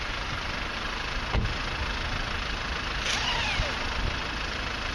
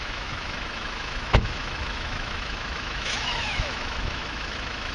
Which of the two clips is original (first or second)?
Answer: first